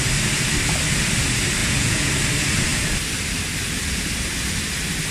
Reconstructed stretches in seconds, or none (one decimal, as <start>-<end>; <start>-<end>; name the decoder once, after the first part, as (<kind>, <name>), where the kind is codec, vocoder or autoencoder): 1.6-2.1 (vocoder, Vocos)